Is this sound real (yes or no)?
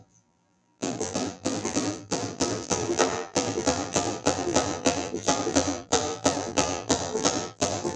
no